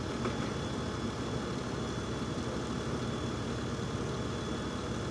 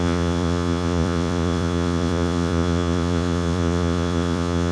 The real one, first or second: first